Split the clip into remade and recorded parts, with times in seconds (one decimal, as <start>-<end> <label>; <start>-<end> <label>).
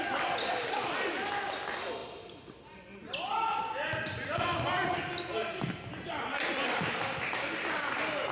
0.0-8.3 recorded